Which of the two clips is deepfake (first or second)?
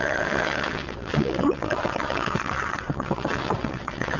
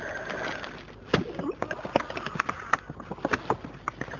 first